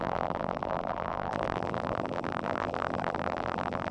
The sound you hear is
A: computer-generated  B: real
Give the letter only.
A